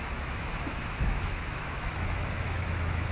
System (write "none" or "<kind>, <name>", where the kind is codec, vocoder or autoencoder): autoencoder, DAC-VAE